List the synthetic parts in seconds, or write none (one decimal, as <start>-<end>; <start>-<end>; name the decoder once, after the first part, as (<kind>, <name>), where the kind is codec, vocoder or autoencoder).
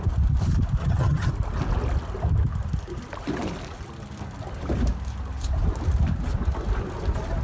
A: 0.8-1.3 (vocoder, HiFi-GAN)